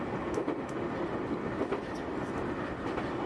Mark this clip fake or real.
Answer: real